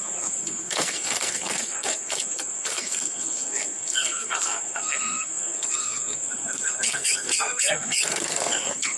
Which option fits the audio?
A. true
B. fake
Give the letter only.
B